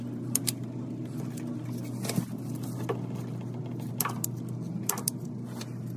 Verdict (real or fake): real